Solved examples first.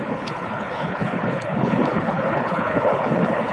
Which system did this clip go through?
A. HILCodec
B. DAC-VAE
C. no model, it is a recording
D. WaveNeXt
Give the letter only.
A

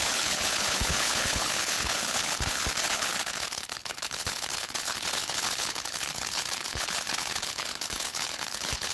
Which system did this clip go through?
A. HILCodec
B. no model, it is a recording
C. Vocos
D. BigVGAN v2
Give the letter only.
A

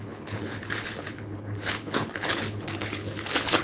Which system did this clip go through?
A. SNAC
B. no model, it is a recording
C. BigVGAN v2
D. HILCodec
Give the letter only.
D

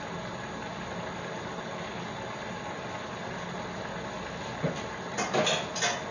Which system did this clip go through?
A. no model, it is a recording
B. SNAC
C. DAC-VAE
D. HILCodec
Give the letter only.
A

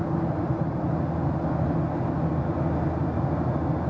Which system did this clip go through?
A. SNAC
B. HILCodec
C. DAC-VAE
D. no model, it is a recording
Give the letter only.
D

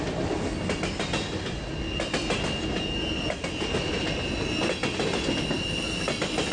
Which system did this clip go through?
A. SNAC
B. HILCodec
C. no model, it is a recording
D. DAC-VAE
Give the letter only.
C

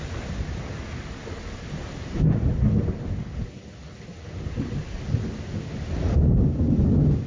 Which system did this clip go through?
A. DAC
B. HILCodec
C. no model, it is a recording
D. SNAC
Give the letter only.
C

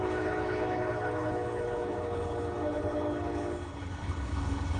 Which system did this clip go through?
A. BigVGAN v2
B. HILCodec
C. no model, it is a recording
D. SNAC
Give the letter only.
B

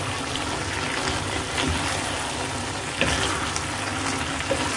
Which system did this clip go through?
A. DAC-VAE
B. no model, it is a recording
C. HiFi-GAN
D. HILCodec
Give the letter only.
B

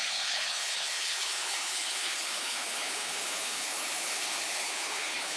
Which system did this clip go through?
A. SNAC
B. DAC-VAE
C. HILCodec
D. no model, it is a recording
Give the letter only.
C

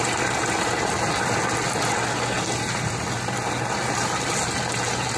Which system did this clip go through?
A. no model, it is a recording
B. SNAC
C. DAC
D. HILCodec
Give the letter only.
A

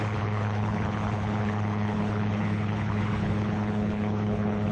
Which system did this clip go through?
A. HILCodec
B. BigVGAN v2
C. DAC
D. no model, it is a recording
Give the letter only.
A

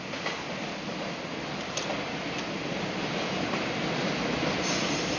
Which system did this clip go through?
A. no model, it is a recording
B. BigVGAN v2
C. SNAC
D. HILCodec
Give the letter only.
A